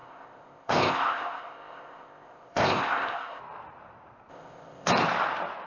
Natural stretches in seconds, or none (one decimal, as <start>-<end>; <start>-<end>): 3.4-4.3; 4.9-5.7